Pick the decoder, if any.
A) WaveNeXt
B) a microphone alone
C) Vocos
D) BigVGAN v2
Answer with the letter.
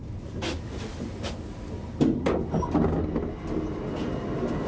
B